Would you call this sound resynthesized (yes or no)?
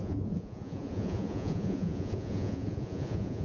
yes